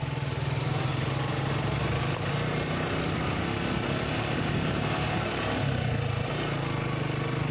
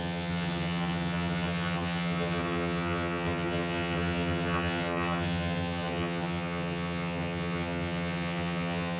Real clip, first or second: first